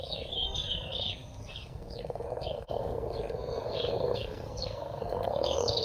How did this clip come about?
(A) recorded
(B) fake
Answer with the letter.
B